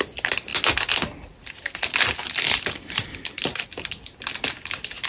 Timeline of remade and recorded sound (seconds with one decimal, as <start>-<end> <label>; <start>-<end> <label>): 0.0-5.1 recorded